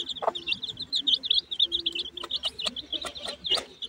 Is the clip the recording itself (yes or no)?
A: yes